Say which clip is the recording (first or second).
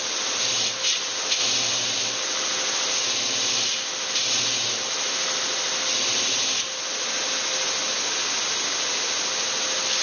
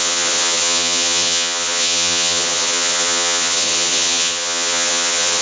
first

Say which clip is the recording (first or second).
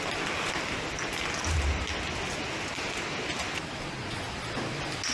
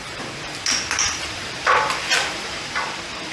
first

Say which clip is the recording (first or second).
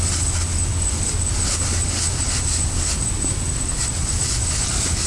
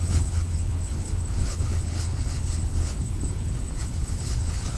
first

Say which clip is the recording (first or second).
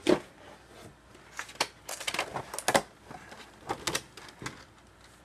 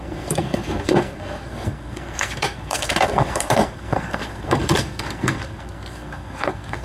first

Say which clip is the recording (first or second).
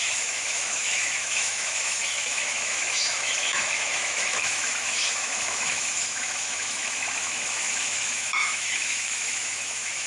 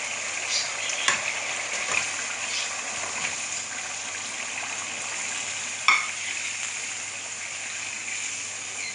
second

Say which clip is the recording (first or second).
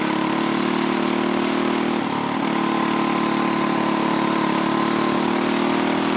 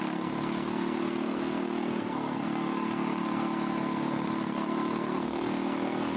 first